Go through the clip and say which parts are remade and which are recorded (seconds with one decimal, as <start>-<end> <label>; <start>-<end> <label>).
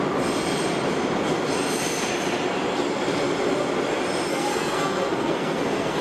0.0-4.3 recorded; 4.3-6.0 remade